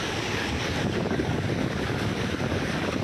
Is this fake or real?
fake